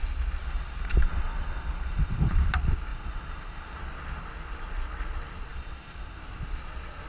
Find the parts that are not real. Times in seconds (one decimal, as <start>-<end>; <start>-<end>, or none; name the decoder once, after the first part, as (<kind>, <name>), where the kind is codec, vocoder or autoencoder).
0.4-2.5 (vocoder, BigVGAN v2); 2.9-3.8; 5.5-6.2